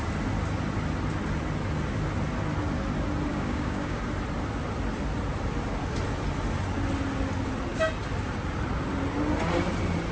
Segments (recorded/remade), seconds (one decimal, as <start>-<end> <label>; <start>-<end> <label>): 0.0-3.3 recorded; 3.3-4.0 remade; 4.0-10.1 recorded